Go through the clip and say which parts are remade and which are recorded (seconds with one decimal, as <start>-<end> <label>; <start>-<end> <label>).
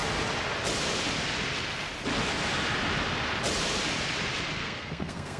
0.0-4.6 recorded; 4.6-5.4 remade